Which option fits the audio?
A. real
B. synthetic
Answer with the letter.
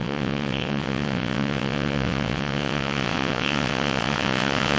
B